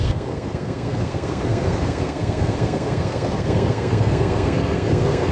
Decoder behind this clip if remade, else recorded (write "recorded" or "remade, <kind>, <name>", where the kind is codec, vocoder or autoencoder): remade, codec, SNAC